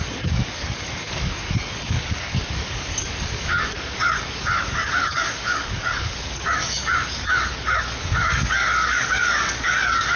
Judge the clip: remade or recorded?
remade